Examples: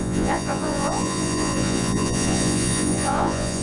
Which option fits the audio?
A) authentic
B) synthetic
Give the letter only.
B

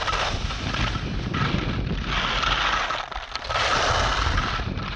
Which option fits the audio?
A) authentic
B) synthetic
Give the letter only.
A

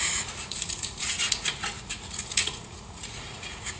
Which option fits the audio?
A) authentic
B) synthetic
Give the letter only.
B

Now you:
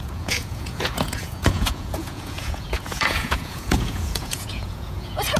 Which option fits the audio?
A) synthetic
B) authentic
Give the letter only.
A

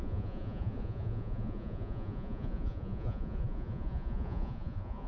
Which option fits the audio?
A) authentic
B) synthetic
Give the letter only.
B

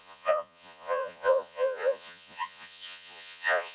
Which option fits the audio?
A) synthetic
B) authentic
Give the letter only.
A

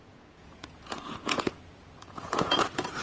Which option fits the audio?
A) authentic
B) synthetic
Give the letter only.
B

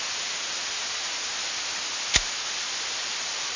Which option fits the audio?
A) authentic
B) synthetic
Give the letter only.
A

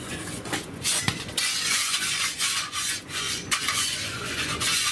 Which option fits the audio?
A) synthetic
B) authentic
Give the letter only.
A